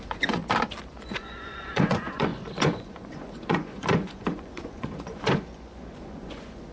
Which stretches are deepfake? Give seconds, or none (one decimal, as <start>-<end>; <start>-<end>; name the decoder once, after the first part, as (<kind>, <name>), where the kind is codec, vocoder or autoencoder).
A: 0.0-0.4 (vocoder, Vocos); 0.9-6.7